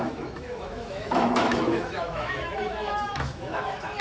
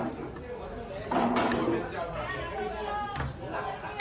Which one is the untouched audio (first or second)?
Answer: second